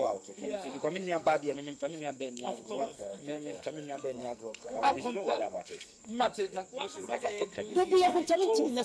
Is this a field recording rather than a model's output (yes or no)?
no